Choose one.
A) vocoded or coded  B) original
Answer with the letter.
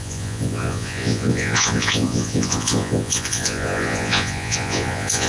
A